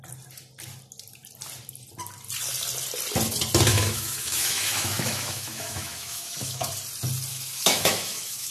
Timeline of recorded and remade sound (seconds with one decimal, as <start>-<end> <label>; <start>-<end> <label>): 0.0-3.7 recorded; 3.7-6.7 remade; 6.7-7.3 recorded; 7.3-8.5 remade